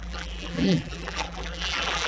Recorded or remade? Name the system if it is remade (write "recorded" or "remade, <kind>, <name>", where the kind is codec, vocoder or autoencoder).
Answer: remade, vocoder, BigVGAN v2